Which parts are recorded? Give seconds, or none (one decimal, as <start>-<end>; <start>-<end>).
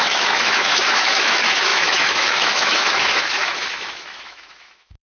none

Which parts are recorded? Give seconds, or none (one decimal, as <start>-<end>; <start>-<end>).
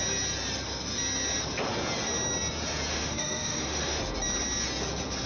0.0-2.9; 4.0-5.3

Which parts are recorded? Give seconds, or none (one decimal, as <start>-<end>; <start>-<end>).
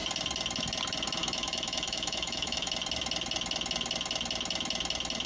0.0-1.2; 2.7-5.3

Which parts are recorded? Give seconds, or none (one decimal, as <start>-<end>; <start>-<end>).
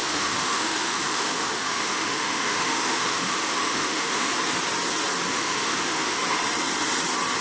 4.3-5.3; 6.2-7.4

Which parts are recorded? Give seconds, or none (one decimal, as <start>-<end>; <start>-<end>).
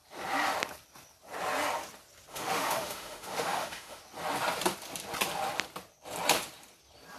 0.0-2.3; 4.0-7.2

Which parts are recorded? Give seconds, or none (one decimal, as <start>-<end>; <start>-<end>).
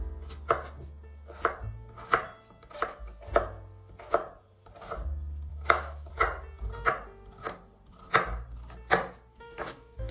0.0-5.5; 6.1-9.3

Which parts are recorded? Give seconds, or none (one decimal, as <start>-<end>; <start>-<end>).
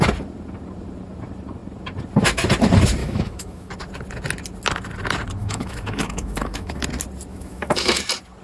0.0-3.0; 3.7-5.4; 6.8-7.3; 8.0-8.4